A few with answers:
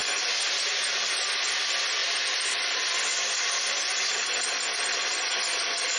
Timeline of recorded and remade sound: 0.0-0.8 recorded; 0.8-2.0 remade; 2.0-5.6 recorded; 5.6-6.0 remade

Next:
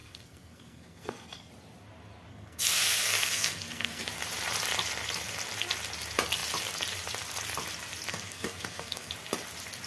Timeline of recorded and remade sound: 0.0-1.5 remade; 1.5-2.3 recorded; 2.3-4.0 remade; 4.0-8.1 recorded; 8.1-9.1 remade; 9.1-9.9 recorded

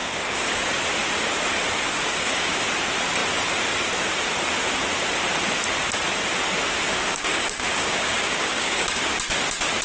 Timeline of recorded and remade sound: 0.0-0.6 remade; 0.6-1.9 recorded; 1.9-2.6 remade; 2.6-6.9 recorded; 6.9-9.0 remade; 9.0-9.8 recorded

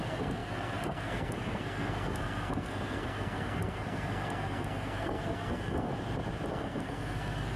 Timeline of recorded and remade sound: 0.0-5.9 remade; 5.9-6.5 recorded; 6.5-7.6 remade

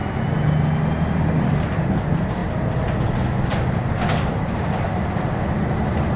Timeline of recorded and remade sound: 0.0-6.2 recorded

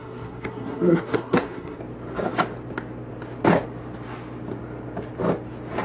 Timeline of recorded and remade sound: 0.0-1.8 remade; 1.8-5.8 recorded